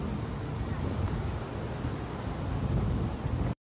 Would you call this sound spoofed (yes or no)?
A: no